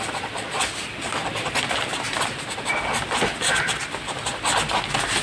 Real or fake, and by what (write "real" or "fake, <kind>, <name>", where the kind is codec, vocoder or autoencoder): real